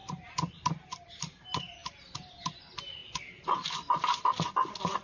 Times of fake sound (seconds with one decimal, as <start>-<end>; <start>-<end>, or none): none